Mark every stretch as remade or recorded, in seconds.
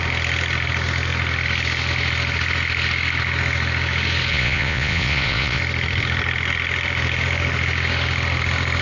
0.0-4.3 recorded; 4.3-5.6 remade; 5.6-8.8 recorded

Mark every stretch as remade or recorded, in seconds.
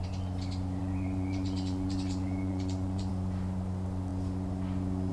0.0-0.8 recorded; 0.8-3.1 remade; 3.1-5.1 recorded